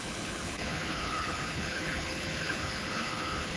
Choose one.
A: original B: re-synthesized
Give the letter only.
B